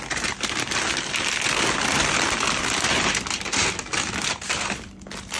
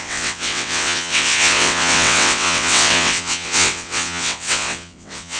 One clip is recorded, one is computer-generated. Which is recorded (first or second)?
first